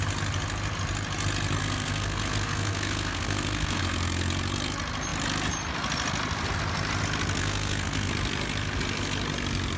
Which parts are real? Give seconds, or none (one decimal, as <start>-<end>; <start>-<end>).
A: 0.0-1.6; 3.8-7.4; 8.1-9.8